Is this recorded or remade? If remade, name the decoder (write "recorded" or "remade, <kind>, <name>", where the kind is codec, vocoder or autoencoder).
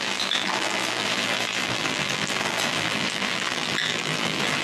remade, vocoder, BigVGAN v2